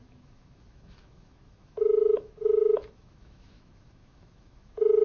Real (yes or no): no